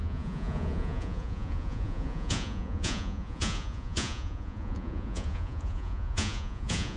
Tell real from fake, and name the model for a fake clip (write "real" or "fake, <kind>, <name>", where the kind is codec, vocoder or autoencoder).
fake, vocoder, Vocos